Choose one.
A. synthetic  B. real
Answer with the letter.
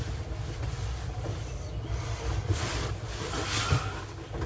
B